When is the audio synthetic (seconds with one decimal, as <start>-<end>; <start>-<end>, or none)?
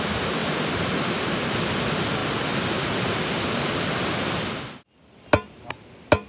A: none